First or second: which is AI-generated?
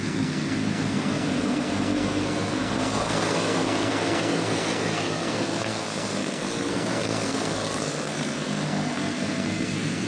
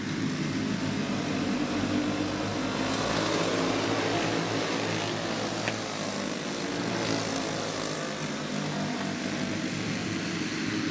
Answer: first